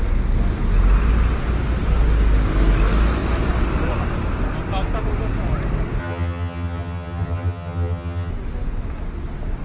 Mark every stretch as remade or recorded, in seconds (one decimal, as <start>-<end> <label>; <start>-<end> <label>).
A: 0.0-6.0 recorded; 6.0-8.3 remade; 8.3-9.6 recorded